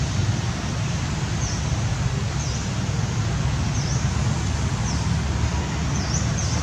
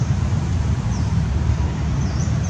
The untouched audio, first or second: first